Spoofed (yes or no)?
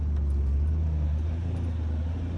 no